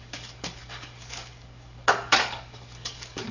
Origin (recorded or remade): remade